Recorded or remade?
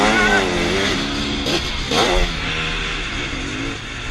recorded